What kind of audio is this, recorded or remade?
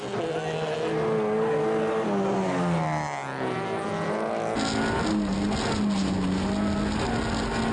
recorded